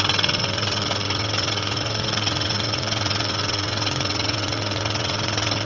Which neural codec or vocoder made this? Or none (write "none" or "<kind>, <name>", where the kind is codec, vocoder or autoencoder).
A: vocoder, WaveNeXt